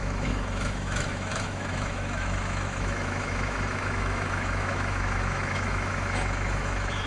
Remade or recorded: remade